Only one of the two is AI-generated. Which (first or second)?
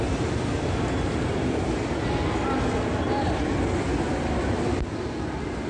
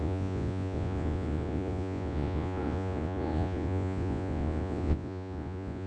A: second